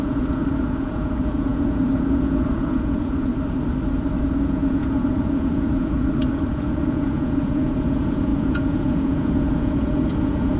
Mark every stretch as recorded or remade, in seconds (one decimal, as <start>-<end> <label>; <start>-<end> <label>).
0.0-3.3 remade; 3.3-4.4 recorded; 4.4-10.6 remade